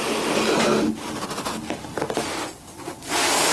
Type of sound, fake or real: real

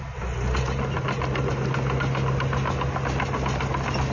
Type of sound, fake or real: real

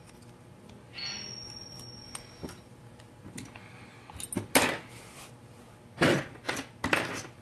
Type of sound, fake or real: real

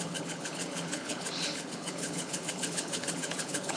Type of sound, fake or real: fake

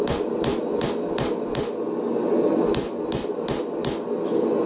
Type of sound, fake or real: real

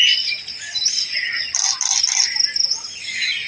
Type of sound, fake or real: real